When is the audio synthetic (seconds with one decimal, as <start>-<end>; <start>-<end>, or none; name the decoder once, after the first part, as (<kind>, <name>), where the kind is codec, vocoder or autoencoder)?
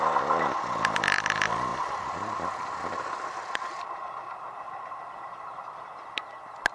none